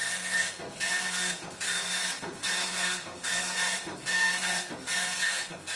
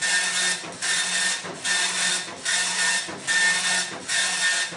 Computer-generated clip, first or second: first